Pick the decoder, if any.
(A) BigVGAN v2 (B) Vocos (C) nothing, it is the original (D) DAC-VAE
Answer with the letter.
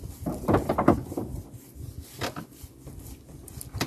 C